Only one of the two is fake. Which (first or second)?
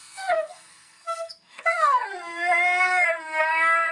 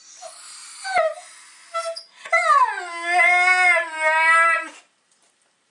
first